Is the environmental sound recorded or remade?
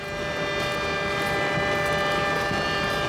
recorded